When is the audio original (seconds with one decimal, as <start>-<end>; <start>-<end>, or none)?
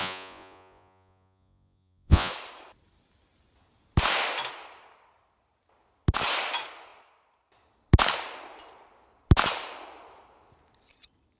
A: 2.3-11.4